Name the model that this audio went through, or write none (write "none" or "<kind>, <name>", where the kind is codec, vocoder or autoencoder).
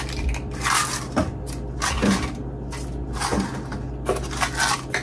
none